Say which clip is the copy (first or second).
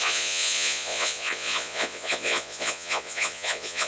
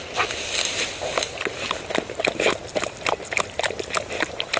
first